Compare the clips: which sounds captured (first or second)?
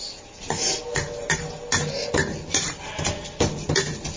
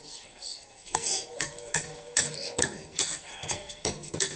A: first